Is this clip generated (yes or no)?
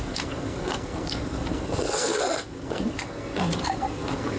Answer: yes